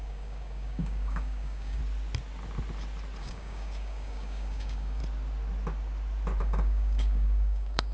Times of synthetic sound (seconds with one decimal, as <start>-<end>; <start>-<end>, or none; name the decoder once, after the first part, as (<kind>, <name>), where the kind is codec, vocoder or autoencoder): 0.0-1.8 (codec, DAC); 3.2-5.0; 6.4-7.9